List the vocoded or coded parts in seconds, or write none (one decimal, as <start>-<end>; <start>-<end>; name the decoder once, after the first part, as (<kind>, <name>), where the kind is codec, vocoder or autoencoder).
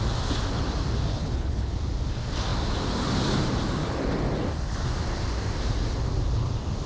1.1-1.7 (codec, HILCodec)